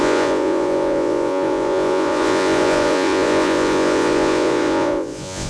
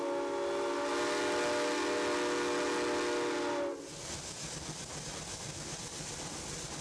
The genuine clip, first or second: second